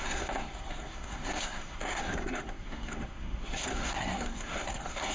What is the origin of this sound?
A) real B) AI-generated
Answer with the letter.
B